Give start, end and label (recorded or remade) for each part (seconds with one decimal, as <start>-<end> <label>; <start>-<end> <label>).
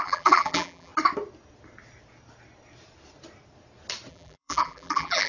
0.0-0.9 remade; 0.9-4.1 recorded; 4.1-5.3 remade